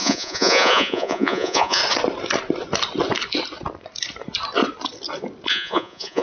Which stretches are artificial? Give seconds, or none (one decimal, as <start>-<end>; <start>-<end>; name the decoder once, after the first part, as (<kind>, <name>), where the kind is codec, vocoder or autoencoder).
0.0-1.8 (vocoder, Vocos); 5.5-6.2